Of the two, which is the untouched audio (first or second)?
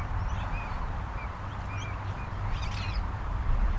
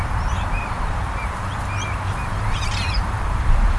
first